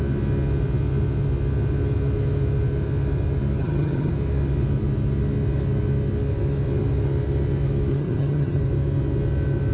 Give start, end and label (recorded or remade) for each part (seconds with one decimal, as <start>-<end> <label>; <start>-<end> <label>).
0.0-3.6 recorded; 3.6-4.1 remade; 4.1-7.9 recorded; 7.9-8.6 remade; 8.6-9.7 recorded